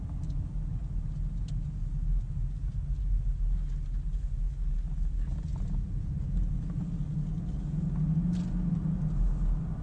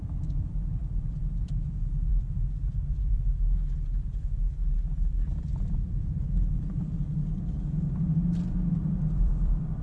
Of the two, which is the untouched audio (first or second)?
first